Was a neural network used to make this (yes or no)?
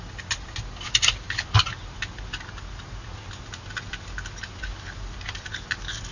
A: no